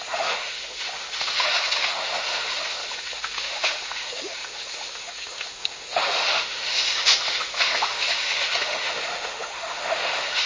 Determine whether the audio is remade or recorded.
remade